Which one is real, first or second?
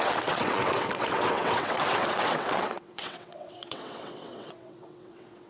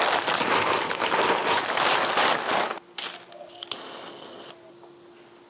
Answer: second